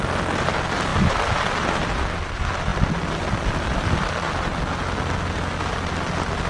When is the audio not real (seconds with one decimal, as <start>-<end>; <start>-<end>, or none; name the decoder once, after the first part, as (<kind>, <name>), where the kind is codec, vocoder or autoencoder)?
none